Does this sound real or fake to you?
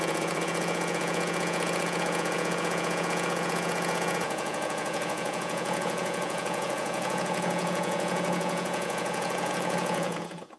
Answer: fake